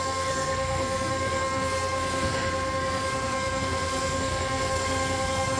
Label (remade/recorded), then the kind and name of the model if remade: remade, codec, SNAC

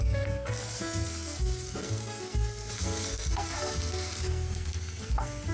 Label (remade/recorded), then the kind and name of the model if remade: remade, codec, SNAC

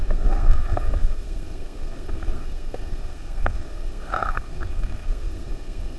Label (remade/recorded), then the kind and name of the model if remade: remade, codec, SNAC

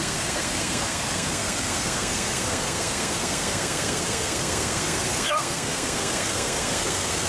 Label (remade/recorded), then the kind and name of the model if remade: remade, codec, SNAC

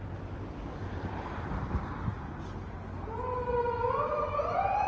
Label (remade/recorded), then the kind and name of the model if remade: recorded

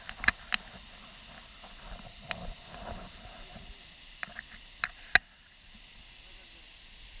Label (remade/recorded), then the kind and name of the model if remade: recorded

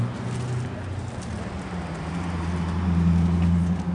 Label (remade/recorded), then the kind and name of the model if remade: recorded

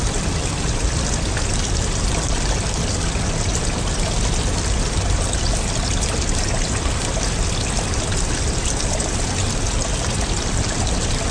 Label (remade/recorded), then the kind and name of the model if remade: recorded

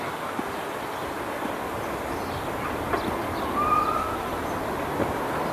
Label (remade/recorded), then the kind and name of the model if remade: recorded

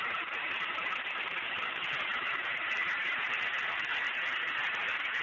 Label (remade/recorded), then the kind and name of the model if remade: recorded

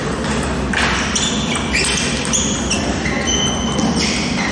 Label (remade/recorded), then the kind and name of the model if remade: recorded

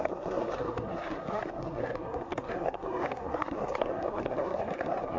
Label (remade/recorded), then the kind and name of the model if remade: remade, codec, SNAC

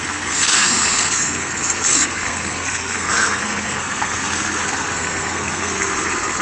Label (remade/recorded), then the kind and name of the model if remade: remade, codec, SNAC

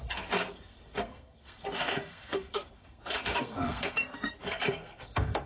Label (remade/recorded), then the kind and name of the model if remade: remade, codec, SNAC